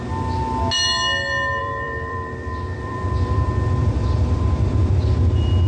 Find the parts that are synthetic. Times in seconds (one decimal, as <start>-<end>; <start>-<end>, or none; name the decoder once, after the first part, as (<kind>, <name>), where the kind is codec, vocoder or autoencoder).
1.6-5.0 (vocoder, BigVGAN v2)